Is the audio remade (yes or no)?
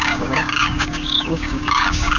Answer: yes